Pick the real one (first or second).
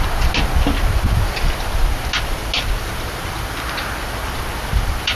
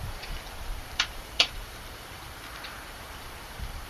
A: first